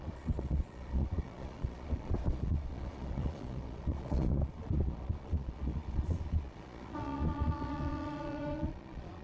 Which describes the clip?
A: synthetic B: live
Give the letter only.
A